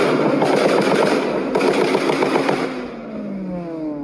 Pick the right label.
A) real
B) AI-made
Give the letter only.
A